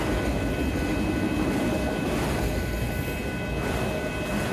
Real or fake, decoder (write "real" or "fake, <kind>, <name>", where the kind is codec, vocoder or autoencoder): real